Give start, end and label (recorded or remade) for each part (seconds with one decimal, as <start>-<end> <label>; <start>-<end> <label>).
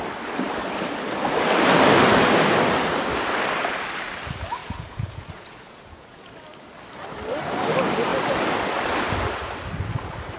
0.0-4.6 recorded; 4.6-6.3 remade; 6.3-10.4 recorded